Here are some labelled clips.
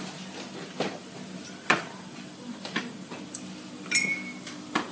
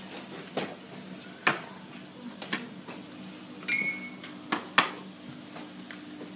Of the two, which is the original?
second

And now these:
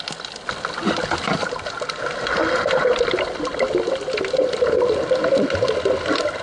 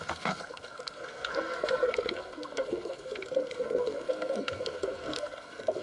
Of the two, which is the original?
first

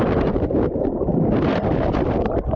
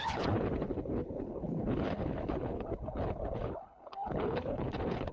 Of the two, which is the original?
first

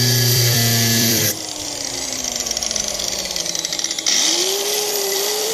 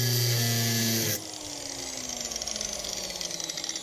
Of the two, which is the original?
second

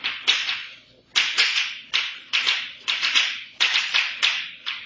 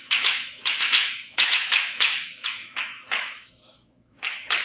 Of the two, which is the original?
first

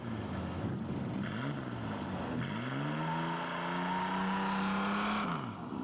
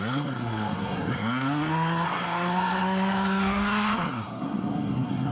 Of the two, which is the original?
first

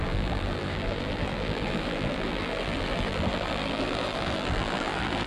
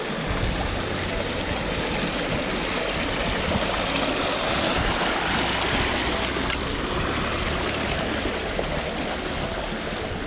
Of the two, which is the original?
second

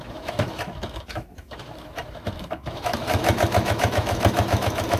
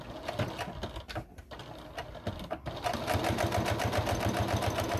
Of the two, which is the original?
second